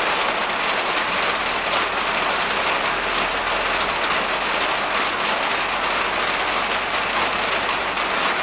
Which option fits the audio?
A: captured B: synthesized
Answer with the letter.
A